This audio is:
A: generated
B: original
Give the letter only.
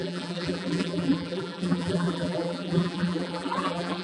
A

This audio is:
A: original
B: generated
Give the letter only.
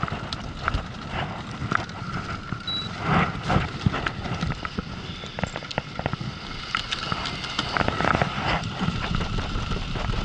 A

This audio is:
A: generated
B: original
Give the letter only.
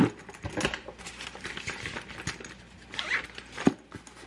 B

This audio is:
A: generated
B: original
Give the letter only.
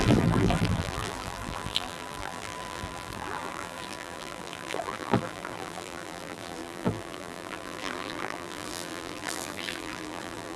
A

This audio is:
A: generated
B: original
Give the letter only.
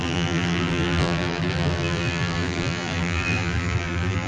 A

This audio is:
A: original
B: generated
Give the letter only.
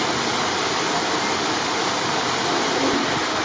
A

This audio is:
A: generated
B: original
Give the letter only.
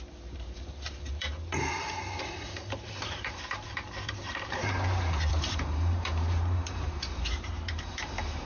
A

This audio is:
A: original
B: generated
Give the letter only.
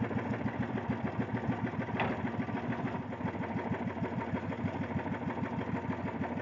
A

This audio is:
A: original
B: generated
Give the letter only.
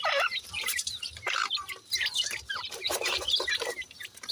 B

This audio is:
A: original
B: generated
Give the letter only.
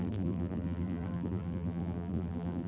B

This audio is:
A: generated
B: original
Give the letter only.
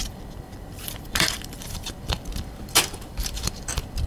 A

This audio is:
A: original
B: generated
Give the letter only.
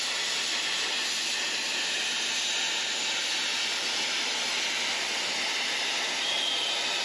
A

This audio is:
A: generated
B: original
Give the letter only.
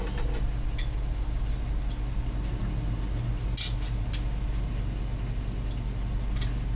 B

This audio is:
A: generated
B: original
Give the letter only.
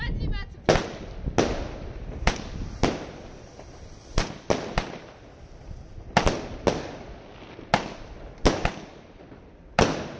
B